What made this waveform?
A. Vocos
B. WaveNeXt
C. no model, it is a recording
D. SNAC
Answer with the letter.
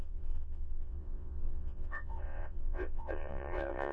B